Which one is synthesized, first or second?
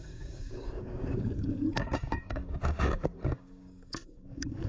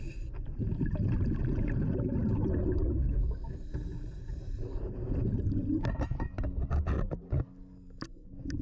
first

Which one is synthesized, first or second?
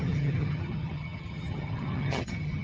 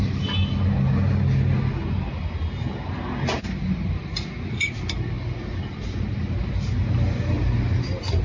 first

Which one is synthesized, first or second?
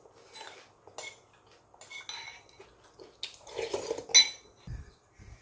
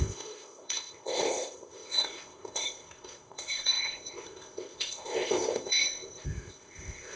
second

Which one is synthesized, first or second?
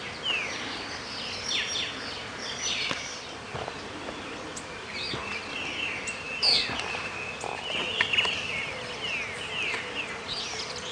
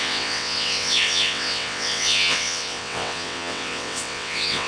second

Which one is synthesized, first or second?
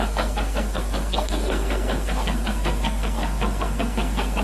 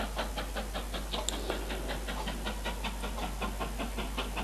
first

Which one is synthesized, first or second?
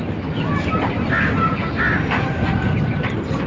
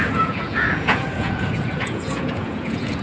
second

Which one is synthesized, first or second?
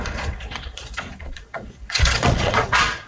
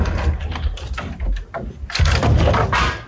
first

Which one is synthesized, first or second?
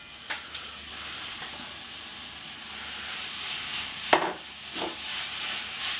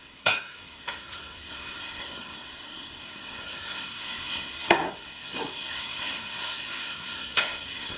second